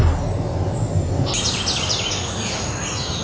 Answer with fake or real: real